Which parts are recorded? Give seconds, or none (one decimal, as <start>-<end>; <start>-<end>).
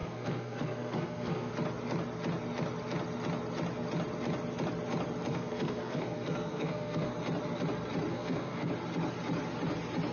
1.5-5.3; 7.1-8.1; 8.7-10.1